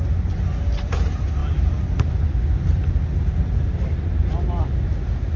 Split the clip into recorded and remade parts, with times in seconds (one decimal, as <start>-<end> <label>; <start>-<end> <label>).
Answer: 0.0-5.4 recorded